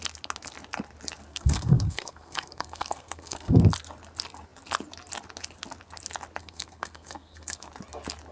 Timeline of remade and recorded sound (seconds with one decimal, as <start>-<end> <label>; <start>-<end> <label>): 0.0-1.3 recorded; 1.3-3.6 remade; 3.6-6.4 recorded; 6.4-7.7 remade; 7.7-8.3 recorded

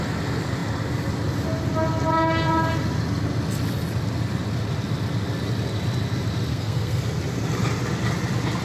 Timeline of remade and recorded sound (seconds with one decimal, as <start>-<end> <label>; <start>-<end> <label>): 0.0-6.5 recorded; 6.5-7.2 remade; 7.2-8.6 recorded

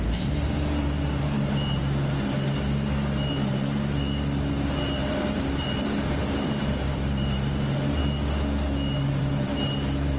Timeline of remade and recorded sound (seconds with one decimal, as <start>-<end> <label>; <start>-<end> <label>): 0.0-1.8 remade; 1.8-3.3 recorded; 3.3-8.0 remade; 8.0-9.1 recorded; 9.1-10.2 remade

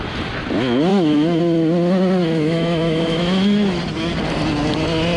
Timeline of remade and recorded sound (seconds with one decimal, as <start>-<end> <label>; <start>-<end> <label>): 0.0-0.9 recorded; 0.9-1.4 remade; 1.4-2.2 recorded; 2.2-3.8 remade; 3.8-5.2 recorded

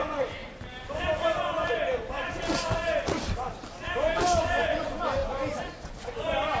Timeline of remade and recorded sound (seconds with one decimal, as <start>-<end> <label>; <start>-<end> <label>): 0.0-0.4 remade; 0.4-4.4 recorded; 4.4-5.2 remade; 5.2-5.9 recorded; 5.9-6.6 remade

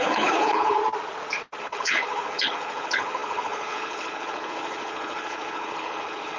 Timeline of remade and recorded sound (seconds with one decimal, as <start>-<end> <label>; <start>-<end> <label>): 0.0-0.8 remade; 0.8-1.6 recorded; 1.6-6.4 remade

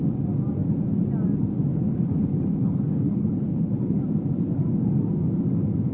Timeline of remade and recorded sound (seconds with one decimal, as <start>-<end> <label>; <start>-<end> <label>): 0.0-1.7 recorded; 1.7-4.0 remade; 4.0-5.9 recorded